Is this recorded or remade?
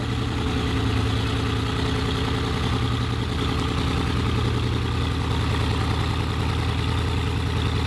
recorded